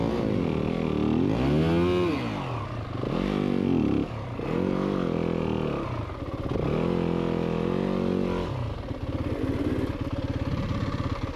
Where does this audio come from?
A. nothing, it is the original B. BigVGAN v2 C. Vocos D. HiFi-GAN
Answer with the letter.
A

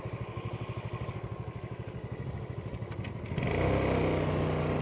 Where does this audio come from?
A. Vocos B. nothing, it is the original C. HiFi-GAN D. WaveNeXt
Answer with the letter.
B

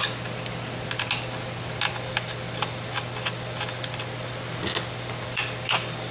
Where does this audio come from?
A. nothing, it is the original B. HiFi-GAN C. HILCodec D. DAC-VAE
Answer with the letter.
A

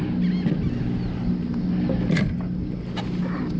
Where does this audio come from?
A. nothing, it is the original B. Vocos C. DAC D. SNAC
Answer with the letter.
A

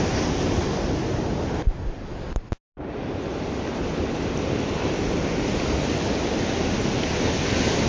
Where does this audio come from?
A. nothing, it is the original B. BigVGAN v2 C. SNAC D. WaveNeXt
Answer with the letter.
A